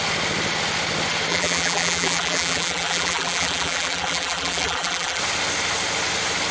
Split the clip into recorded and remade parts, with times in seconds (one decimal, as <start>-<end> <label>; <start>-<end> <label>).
0.0-1.3 recorded; 1.3-5.2 remade; 5.2-6.5 recorded

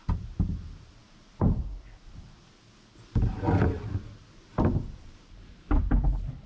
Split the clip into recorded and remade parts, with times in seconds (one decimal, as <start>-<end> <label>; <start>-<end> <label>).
0.0-1.0 recorded; 1.0-1.6 remade; 1.6-4.5 recorded; 4.5-5.8 remade; 5.8-6.5 recorded

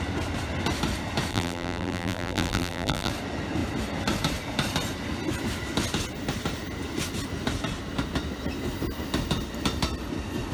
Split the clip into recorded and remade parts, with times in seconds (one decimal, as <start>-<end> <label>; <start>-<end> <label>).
0.0-1.3 recorded; 1.3-3.1 remade; 3.1-10.5 recorded

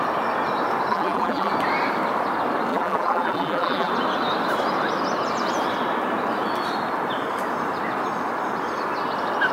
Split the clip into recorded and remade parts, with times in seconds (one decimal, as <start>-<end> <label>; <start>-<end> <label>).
0.0-0.9 recorded; 0.9-1.5 remade; 1.5-2.7 recorded; 2.7-3.9 remade; 3.9-9.5 recorded

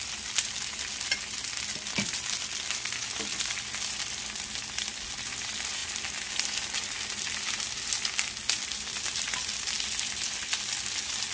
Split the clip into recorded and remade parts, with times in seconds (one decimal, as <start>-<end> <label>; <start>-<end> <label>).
0.0-5.8 recorded; 5.8-6.3 remade; 6.3-9.5 recorded; 9.5-10.0 remade; 10.0-11.3 recorded

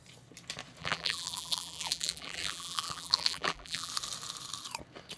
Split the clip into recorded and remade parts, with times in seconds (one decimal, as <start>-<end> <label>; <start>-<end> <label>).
0.0-0.8 recorded; 0.8-3.9 remade; 3.9-5.2 recorded

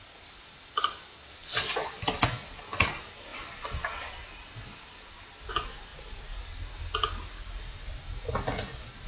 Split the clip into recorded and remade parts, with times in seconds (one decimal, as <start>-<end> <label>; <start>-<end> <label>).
0.0-5.9 recorded; 5.9-6.4 remade; 6.4-9.1 recorded